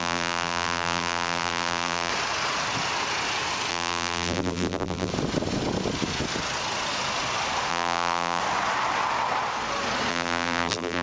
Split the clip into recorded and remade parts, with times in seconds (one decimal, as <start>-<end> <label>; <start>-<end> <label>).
0.0-2.1 remade; 2.1-3.7 recorded; 3.7-5.1 remade; 5.1-7.7 recorded; 7.7-8.4 remade; 8.4-10.1 recorded; 10.1-11.0 remade